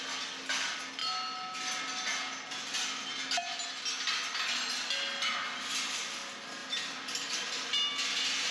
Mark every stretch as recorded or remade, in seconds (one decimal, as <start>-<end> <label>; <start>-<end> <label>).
0.0-6.6 recorded; 6.6-7.9 remade; 7.9-8.5 recorded

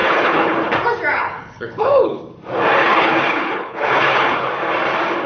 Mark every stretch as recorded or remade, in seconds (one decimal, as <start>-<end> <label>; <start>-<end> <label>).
0.0-0.7 remade; 0.7-1.1 recorded; 1.1-2.2 remade; 2.2-2.8 recorded; 2.8-4.5 remade; 4.5-5.3 recorded

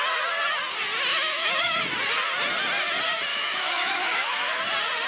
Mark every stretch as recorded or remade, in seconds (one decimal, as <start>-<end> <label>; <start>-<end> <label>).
0.0-1.1 recorded; 1.1-1.8 remade; 1.8-3.3 recorded; 3.3-4.6 remade; 4.6-5.1 recorded

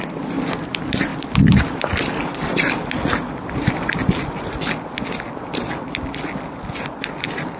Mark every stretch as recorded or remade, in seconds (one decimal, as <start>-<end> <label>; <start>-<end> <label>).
0.0-7.6 recorded